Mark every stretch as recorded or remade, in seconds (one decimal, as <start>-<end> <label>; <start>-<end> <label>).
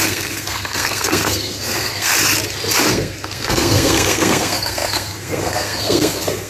0.0-2.1 remade; 2.1-2.9 recorded; 2.9-6.5 remade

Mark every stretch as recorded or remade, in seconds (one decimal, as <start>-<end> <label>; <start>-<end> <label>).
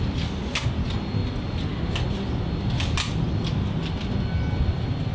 0.0-5.1 recorded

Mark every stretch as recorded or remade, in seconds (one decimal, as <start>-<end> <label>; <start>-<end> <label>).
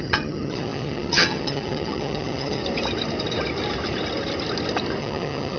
0.0-2.6 remade; 2.6-5.0 recorded; 5.0-5.6 remade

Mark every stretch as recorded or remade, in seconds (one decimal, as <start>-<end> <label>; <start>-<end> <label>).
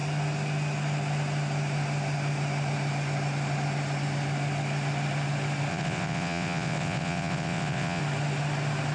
0.0-5.7 recorded; 5.7-8.0 remade; 8.0-8.9 recorded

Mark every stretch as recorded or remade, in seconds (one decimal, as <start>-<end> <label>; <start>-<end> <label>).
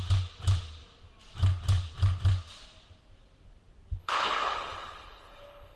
0.0-4.0 recorded; 4.0-5.8 remade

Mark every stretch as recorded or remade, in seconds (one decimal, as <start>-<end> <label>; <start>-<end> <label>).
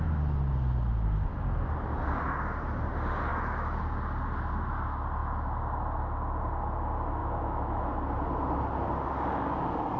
0.0-3.3 recorded; 3.3-3.8 remade; 3.8-7.2 recorded; 7.2-7.9 remade; 7.9-10.0 recorded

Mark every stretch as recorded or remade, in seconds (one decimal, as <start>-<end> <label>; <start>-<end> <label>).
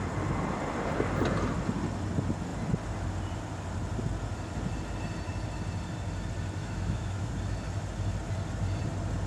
0.0-6.6 recorded; 6.6-7.3 remade; 7.3-9.3 recorded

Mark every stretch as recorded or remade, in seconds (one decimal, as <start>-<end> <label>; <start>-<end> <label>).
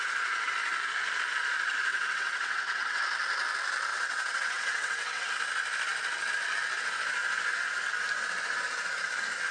0.0-1.9 recorded; 1.9-3.0 remade; 3.0-3.9 recorded; 3.9-5.3 remade; 5.3-9.5 recorded